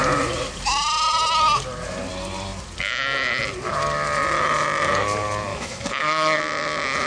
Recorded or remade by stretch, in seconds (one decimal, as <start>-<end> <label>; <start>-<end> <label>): 0.0-5.5 recorded; 5.5-6.4 remade; 6.4-7.1 recorded